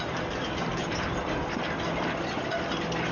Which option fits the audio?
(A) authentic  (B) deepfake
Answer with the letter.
A